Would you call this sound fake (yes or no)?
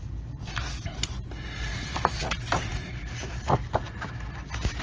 no